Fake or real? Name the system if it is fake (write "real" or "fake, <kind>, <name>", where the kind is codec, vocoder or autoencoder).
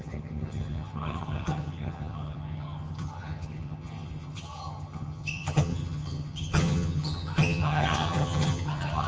fake, vocoder, HiFi-GAN